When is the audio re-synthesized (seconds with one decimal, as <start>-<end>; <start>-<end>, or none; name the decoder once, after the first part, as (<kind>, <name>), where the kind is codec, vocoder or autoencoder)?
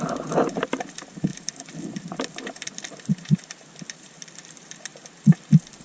0.0-4.9 (vocoder, BigVGAN v2)